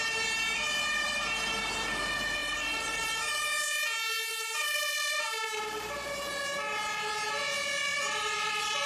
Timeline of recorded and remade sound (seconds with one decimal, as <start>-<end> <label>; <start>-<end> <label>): 0.0-2.4 recorded; 2.4-3.1 remade; 3.1-4.3 recorded; 4.3-6.1 remade; 6.1-7.9 recorded; 7.9-8.9 remade